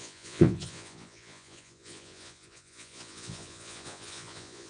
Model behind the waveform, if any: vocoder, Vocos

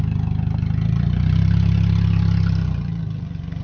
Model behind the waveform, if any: none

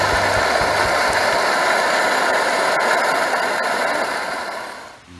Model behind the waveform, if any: none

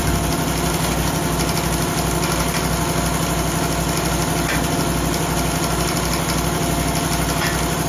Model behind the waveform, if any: none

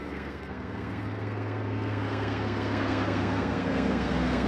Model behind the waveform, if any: codec, SNAC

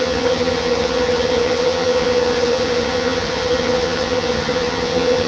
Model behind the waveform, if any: vocoder, HiFi-GAN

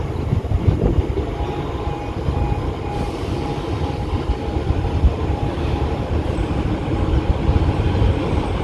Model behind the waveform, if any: none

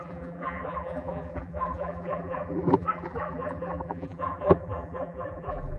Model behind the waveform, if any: vocoder, BigVGAN v2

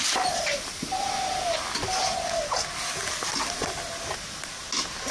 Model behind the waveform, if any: none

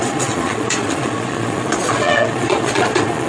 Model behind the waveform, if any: vocoder, Vocos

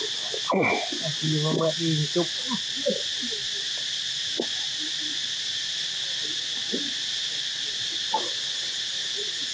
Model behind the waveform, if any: none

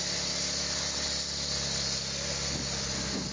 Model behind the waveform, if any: none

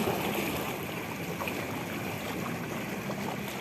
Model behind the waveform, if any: none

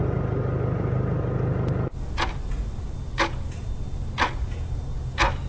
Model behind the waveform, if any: none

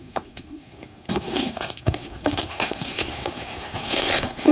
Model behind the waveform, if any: codec, SNAC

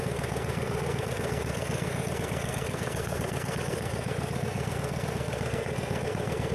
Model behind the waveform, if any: codec, SNAC